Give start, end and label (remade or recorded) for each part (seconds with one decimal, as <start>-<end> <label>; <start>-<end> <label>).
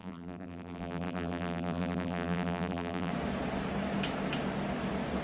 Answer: 0.0-3.1 remade; 3.1-5.2 recorded